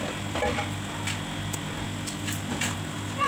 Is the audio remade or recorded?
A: recorded